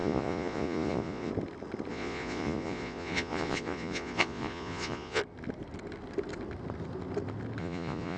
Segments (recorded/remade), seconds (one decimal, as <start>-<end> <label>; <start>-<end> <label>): 0.0-1.3 remade; 1.3-1.9 recorded; 1.9-5.2 remade; 5.2-7.6 recorded; 7.6-8.2 remade